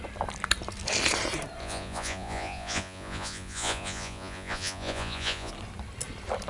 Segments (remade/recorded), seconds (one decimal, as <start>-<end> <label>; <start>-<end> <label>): 0.0-1.6 recorded; 1.6-5.5 remade; 5.5-6.5 recorded